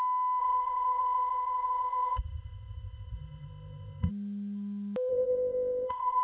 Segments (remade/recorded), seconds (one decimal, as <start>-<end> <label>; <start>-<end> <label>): 0.0-0.4 recorded; 0.4-4.1 remade; 4.1-5.1 recorded; 5.1-6.2 remade